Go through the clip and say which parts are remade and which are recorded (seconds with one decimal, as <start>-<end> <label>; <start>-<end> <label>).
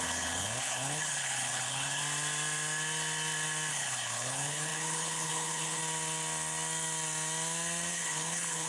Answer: 0.0-2.0 remade; 2.0-3.7 recorded; 3.7-5.8 remade; 5.8-7.9 recorded; 7.9-8.7 remade